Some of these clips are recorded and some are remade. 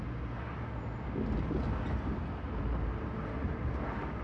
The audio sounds recorded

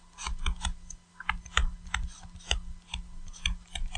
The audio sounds recorded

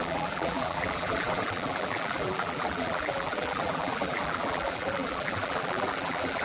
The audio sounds remade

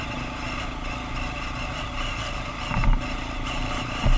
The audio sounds recorded